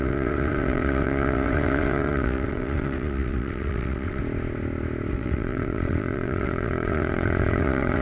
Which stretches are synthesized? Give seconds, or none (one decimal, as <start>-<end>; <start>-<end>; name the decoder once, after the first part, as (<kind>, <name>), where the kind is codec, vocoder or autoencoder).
0.0-4.2 (vocoder, WaveNeXt); 5.1-8.0